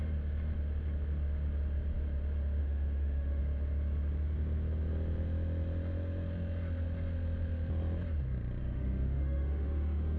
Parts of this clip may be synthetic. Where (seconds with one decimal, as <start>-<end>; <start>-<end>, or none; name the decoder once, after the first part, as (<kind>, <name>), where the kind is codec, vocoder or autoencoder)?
2.6-3.4 (autoencoder, DAC-VAE); 8.6-10.2